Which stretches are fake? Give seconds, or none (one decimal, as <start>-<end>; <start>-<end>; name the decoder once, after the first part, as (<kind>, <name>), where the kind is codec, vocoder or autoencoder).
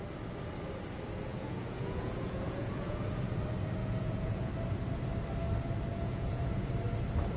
1.3-3.3 (vocoder, Vocos); 3.8-4.5; 5.9-6.7